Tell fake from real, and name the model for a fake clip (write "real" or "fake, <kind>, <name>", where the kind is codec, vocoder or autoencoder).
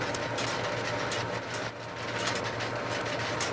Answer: real